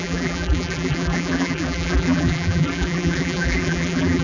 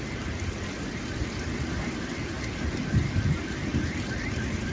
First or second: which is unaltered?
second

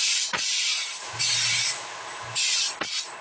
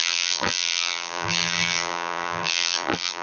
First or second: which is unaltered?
first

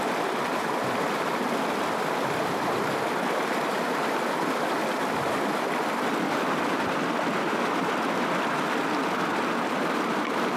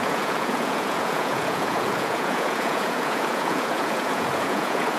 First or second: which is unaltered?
first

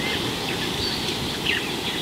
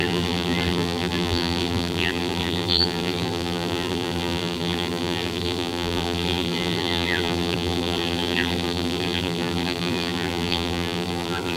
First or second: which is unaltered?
first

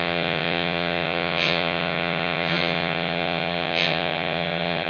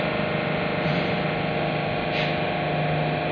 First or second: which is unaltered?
second